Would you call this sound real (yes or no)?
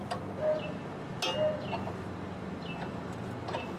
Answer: yes